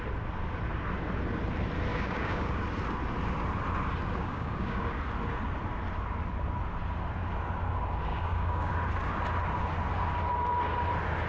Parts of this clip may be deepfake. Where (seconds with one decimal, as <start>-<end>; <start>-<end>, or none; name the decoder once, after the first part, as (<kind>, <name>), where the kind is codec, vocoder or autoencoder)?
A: 1.9-2.6 (codec, DAC); 4.2-5.0; 8.1-8.7